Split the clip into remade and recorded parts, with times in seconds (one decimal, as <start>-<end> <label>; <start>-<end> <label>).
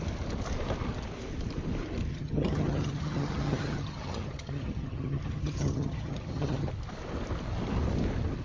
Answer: 0.0-2.1 recorded; 2.1-6.7 remade; 6.7-8.4 recorded